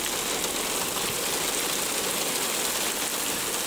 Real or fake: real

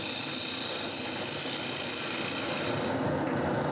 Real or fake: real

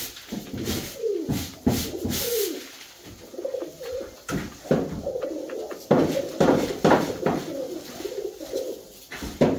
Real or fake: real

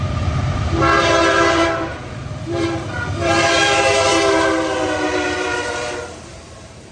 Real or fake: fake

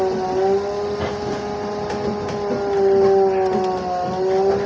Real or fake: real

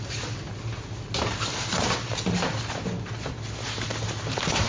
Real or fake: real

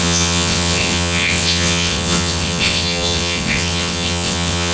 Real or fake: fake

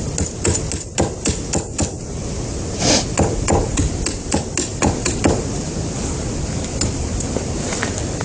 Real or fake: real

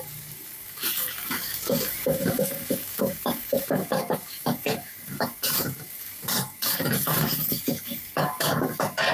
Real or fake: fake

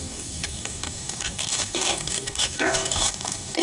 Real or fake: fake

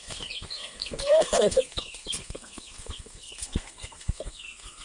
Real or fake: fake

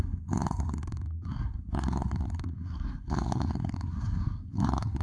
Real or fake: fake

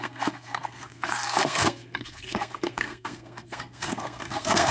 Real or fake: fake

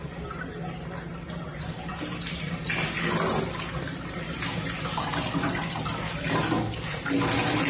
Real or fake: real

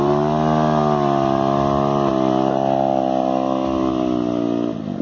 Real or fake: real